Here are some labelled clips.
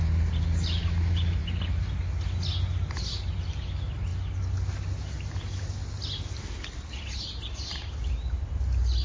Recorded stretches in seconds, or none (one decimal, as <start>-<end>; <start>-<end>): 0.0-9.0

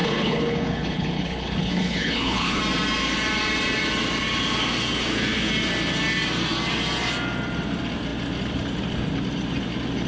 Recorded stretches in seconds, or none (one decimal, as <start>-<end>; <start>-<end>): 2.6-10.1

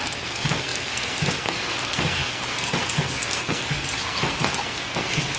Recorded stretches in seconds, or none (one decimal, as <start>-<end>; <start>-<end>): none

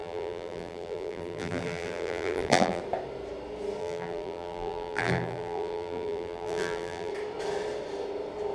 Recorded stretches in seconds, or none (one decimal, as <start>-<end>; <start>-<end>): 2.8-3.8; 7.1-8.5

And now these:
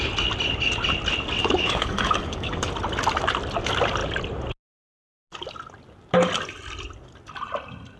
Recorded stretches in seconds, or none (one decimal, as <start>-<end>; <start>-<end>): 0.0-1.4; 2.7-8.0

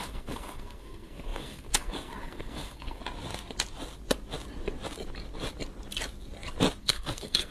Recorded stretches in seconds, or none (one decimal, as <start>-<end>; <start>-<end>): 3.0-6.8